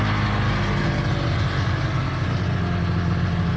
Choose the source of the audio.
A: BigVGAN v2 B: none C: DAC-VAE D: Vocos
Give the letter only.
B